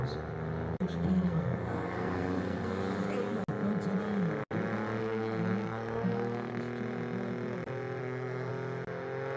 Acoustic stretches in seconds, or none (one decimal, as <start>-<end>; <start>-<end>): 0.0-0.7; 2.8-5.0; 6.6-8.0; 8.5-9.4